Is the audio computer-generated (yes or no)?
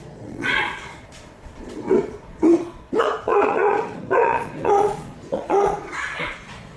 yes